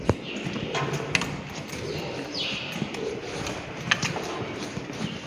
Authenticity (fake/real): real